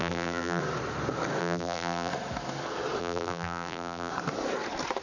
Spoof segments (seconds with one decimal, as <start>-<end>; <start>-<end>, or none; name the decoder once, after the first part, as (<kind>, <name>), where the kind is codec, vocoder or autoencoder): 0.0-0.6 (vocoder, BigVGAN v2); 1.4-2.1; 3.0-4.1